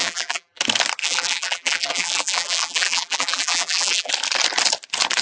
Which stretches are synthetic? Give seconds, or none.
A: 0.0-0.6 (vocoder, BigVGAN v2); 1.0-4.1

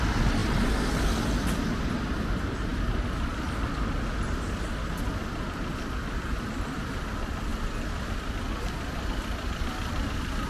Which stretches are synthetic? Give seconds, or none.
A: none